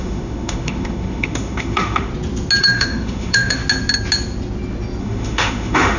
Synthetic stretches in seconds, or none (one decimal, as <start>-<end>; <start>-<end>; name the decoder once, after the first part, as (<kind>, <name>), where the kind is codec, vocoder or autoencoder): 0.0-2.1 (autoencoder, DAC-VAE); 2.6-3.6; 5.0-6.0

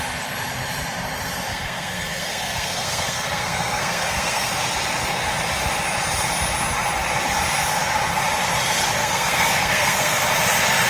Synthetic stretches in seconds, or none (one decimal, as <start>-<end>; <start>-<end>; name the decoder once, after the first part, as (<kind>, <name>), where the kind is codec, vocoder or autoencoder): 1.5-4.5 (codec, SNAC); 9.0-10.2

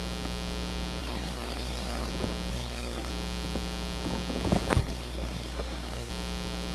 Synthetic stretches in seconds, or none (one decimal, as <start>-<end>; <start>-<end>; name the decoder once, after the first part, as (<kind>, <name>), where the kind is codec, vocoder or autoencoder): 1.0-2.1 (codec, SNAC); 2.5-3.1; 4.8-6.1

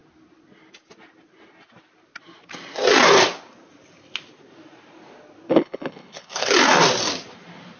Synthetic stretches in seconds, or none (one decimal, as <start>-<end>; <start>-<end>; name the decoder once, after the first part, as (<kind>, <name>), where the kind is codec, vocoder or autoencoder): 5.5-6.5 (codec, HILCodec)

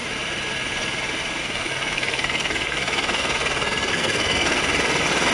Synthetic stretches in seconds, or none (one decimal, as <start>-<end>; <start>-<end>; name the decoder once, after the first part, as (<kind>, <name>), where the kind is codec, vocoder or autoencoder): 1.4-4.6 (codec, SNAC)

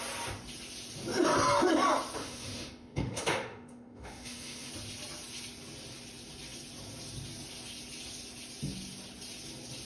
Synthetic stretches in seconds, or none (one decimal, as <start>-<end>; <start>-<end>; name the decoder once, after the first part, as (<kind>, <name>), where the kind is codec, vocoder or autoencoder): 2.2-4.7 (autoencoder, DAC-VAE)